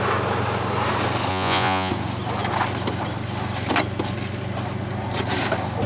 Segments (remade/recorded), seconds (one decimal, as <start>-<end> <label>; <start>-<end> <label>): 0.0-1.3 recorded; 1.3-1.9 remade; 1.9-5.9 recorded